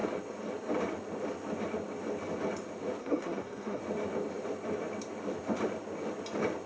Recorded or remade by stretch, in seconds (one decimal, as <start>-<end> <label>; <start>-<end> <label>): 0.0-3.0 recorded; 3.0-3.8 remade; 3.8-6.7 recorded